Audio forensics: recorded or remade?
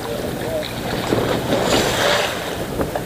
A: recorded